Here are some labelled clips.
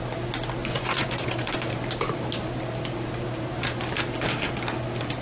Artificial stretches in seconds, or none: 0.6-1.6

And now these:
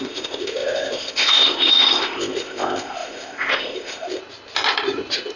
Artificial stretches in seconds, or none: 0.0-4.2

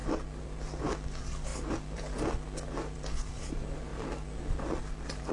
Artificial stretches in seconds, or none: none